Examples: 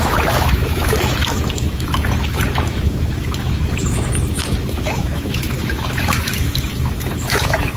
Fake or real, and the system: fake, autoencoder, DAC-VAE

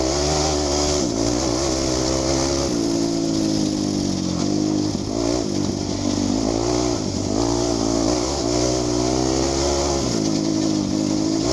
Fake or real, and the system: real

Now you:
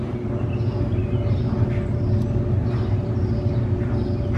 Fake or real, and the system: real